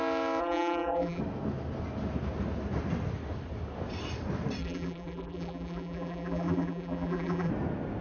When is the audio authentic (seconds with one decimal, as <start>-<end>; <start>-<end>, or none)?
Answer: 0.0-0.4; 1.2-4.6; 7.5-8.0